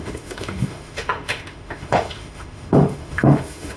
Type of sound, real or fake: fake